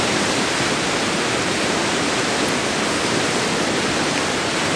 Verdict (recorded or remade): recorded